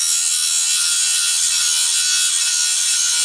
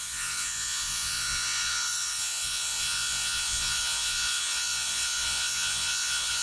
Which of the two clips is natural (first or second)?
first